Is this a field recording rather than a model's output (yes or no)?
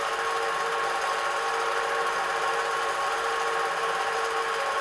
no